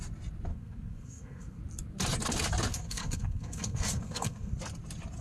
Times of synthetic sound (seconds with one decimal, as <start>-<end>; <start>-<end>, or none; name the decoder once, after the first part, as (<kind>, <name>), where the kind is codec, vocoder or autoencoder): 0.5-1.6 (codec, SNAC); 2.7-4.5